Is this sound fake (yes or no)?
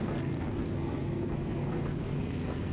yes